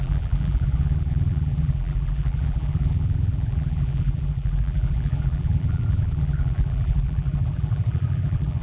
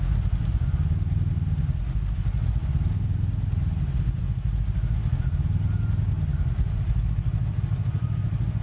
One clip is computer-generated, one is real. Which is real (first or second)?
second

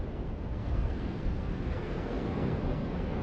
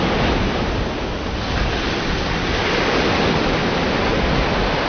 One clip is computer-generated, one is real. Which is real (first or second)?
second